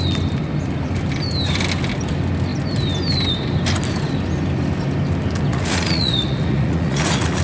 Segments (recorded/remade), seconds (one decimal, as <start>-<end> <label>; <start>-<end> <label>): 0.0-5.5 recorded; 5.5-7.4 remade